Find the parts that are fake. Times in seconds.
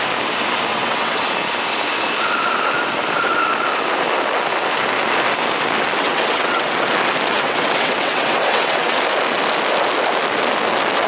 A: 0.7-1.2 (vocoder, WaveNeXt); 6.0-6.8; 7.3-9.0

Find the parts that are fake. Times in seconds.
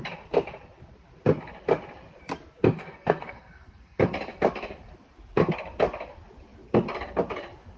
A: 2.8-4.0 (codec, SNAC)